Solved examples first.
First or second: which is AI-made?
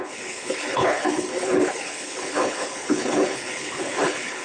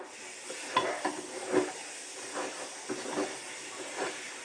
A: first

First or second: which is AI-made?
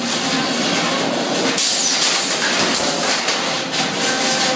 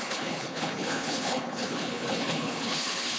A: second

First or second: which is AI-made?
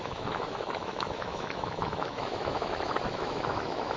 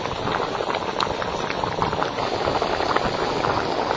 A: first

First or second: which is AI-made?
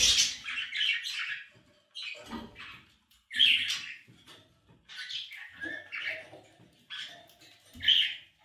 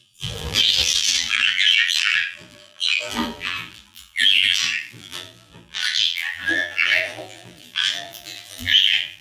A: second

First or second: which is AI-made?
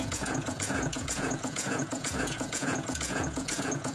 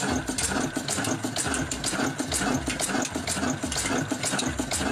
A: first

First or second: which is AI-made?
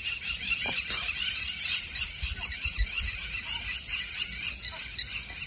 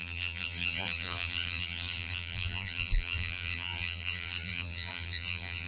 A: second